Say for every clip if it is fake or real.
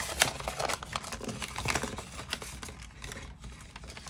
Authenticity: real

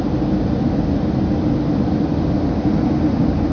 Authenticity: real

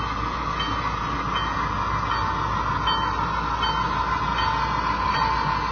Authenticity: real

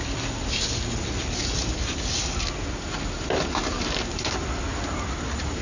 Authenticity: real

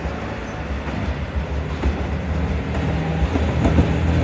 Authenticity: real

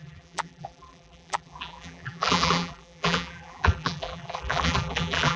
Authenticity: fake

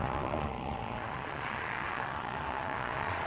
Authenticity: fake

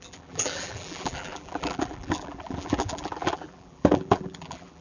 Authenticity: fake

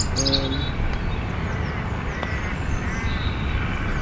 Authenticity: real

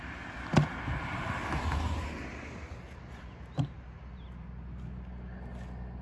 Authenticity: real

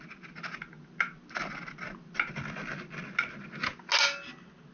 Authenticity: real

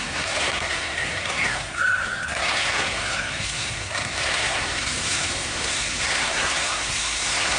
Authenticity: fake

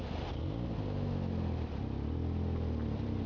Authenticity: real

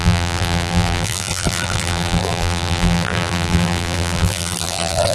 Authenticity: fake